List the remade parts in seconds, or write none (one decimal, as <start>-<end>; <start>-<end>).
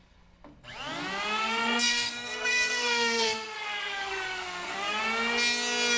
1.4-5.0